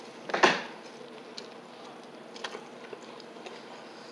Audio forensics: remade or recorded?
recorded